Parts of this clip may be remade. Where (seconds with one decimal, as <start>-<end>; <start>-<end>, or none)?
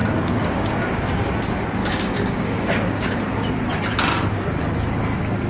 0.0-1.4; 1.8-3.2